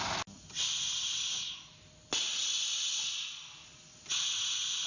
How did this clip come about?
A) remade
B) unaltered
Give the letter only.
B